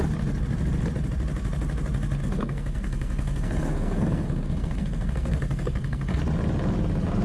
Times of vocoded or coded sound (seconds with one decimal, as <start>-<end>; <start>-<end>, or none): 2.2-6.2